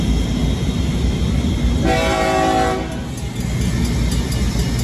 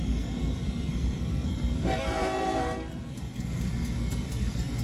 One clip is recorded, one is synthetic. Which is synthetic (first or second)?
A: second